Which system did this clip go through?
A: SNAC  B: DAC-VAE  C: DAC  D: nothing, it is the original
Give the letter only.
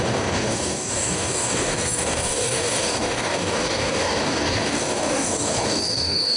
C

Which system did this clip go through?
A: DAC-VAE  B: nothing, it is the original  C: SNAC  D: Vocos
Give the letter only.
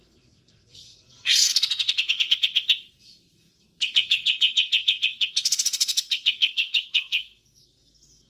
C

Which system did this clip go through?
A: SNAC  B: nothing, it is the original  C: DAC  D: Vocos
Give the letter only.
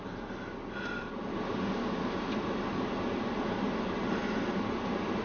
B